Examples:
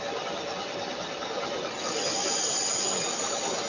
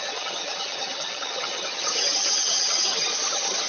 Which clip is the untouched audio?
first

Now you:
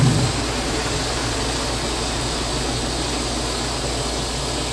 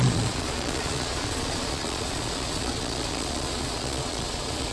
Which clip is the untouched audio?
first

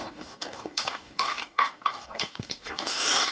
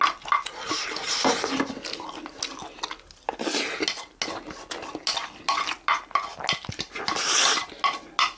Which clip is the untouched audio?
second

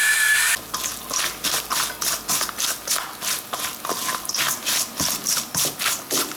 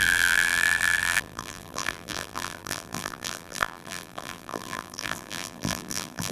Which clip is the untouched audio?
first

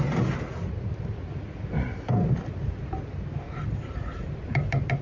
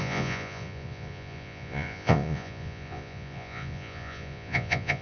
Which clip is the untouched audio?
first